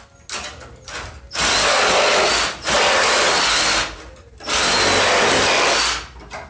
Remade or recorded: recorded